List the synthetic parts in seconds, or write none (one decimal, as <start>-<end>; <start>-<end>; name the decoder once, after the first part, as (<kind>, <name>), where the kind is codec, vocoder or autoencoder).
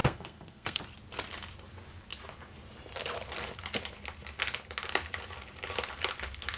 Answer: 0.0-0.8 (codec, SNAC)